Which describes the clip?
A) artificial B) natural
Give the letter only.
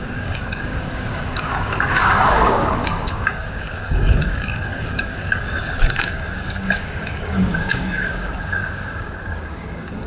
A